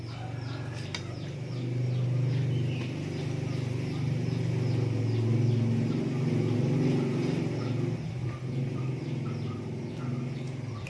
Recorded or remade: recorded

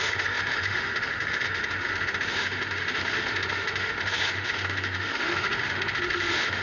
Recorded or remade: remade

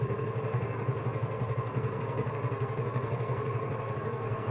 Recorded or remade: remade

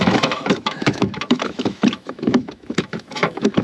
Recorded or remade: remade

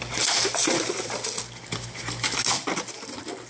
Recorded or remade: recorded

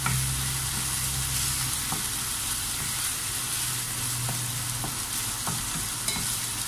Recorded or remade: recorded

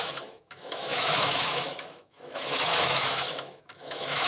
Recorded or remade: remade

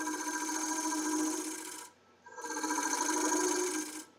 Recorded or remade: recorded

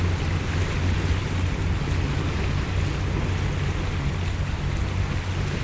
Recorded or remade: recorded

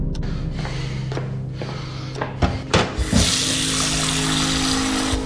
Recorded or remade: recorded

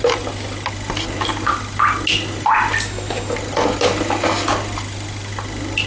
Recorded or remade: recorded